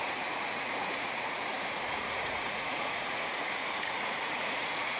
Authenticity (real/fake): fake